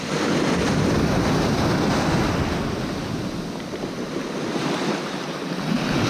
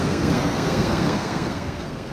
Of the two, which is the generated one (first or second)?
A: second